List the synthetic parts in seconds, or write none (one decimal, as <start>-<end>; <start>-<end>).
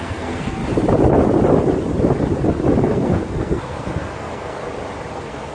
0.0-0.6; 2.8-4.6; 5.1-5.5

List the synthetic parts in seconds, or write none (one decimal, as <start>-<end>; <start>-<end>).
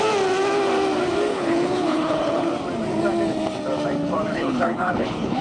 1.3-2.5; 4.3-5.4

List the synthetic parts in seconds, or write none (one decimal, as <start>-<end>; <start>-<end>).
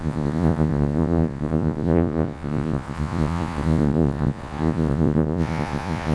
0.0-6.1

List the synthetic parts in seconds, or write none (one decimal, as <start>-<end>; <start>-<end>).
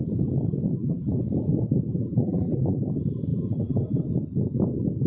0.7-1.2; 1.9-2.8; 3.3-4.0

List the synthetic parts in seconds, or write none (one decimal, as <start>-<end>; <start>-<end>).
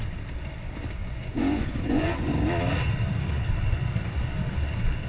1.0-2.3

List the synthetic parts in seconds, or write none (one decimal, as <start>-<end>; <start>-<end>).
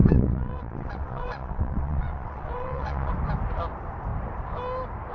0.0-3.1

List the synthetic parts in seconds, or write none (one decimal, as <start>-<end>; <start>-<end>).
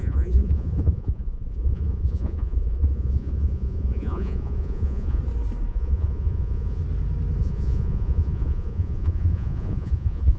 0.0-5.2; 5.7-6.8; 7.4-10.4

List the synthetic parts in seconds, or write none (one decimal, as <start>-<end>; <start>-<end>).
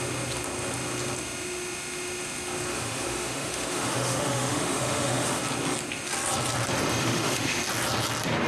2.7-5.4; 7.0-7.6